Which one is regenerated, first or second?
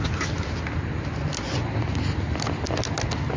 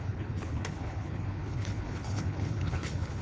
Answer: second